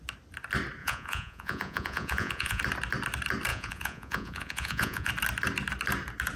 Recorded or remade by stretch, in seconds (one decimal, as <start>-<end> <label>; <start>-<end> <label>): 0.0-0.8 recorded; 0.8-2.6 remade; 2.6-3.5 recorded; 3.5-5.1 remade; 5.1-6.4 recorded